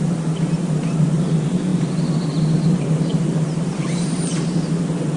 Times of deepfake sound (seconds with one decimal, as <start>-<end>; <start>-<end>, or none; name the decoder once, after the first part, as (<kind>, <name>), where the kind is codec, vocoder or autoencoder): none